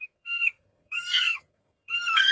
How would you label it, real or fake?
fake